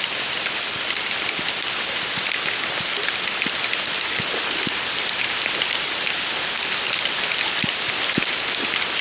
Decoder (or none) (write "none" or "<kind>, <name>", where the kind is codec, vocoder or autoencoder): none